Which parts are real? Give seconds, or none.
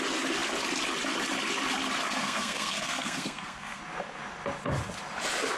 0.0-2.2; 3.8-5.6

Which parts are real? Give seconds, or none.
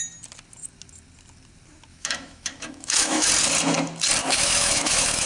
0.0-1.9; 3.3-4.2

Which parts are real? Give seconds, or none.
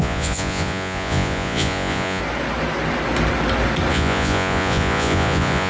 2.2-3.9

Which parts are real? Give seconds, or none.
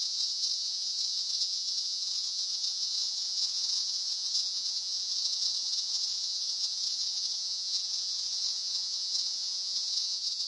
none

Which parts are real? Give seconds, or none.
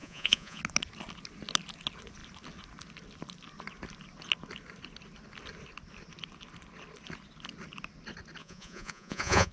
0.6-8.4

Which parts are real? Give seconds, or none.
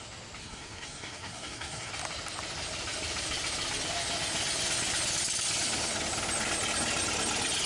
0.0-0.4; 1.9-7.7